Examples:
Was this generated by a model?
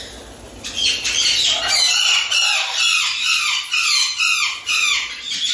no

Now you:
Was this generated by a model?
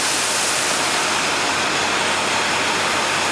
no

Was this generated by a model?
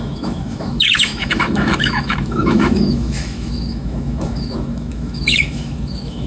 yes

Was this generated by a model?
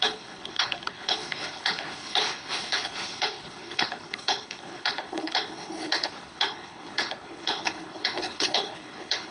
yes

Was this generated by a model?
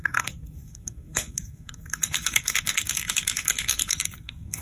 yes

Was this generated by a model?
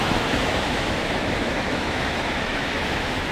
yes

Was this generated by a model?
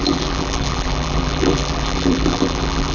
yes